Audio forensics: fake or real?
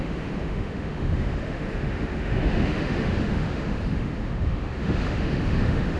fake